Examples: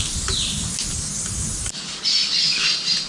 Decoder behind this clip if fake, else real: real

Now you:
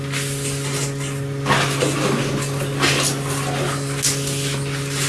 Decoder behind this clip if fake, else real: real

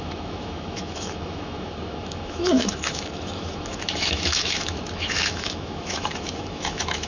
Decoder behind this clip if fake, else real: fake, autoencoder, DAC-VAE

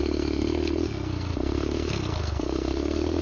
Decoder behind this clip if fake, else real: fake, codec, SNAC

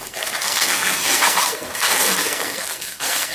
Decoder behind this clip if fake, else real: fake, codec, SNAC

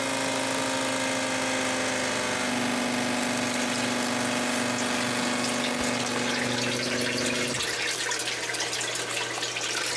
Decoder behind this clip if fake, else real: real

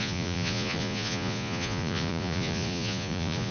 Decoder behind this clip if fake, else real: fake, vocoder, Vocos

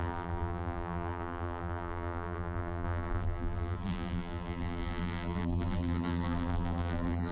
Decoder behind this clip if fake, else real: fake, vocoder, BigVGAN v2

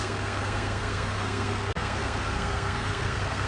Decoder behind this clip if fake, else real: fake, codec, SNAC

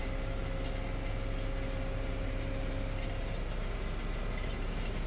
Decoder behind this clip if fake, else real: real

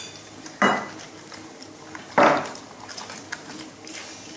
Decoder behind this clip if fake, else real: real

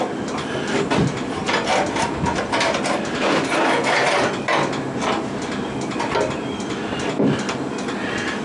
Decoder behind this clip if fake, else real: real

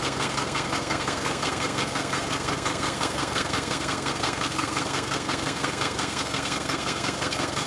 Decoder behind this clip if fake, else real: fake, codec, SNAC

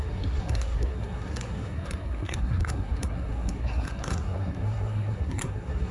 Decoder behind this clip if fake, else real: fake, codec, SNAC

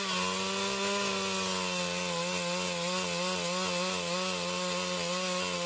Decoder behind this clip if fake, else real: real